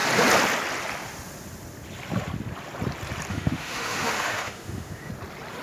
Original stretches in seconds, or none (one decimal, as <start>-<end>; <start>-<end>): 0.0-3.3; 5.1-5.6